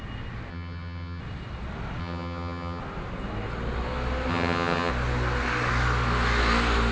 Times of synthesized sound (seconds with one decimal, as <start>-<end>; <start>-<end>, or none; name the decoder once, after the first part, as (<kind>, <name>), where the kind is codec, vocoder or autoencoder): 0.5-1.2 (vocoder, HiFi-GAN); 2.0-2.8; 4.3-4.9